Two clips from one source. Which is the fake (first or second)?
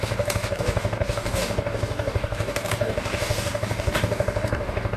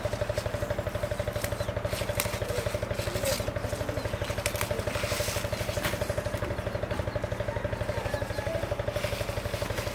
first